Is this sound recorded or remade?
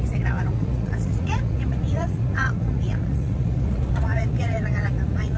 remade